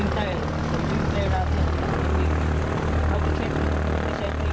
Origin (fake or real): real